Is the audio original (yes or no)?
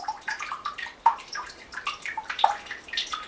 no